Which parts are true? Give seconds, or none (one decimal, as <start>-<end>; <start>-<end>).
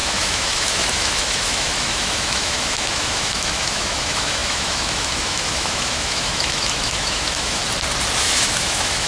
7.6-8.2